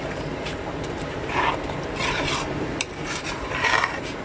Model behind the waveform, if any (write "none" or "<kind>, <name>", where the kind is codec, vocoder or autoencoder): vocoder, BigVGAN v2